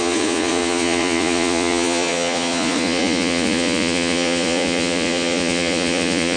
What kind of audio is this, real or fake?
fake